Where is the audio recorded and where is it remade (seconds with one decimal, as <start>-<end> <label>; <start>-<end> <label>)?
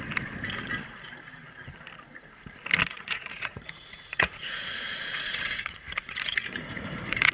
0.0-2.9 recorded; 2.9-7.3 remade